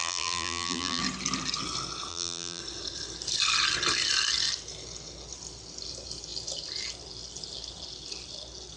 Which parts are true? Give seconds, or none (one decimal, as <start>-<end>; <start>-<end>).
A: 1.0-2.1; 2.6-8.8